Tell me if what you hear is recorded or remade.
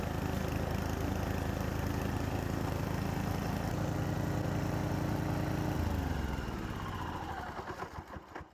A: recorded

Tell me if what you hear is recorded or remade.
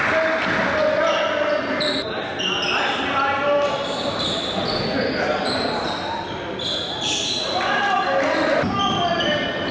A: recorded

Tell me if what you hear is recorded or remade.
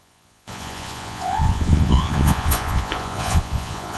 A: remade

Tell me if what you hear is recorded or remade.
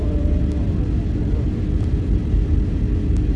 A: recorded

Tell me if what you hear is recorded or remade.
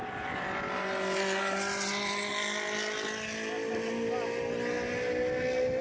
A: recorded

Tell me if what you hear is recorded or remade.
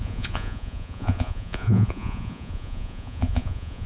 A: remade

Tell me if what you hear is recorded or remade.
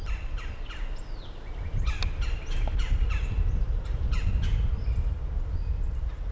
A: recorded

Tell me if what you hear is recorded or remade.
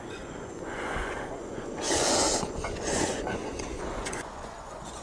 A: remade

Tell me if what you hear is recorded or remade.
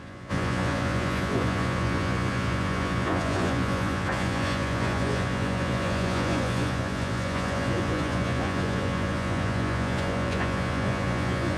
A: remade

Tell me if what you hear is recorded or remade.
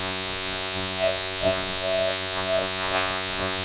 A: remade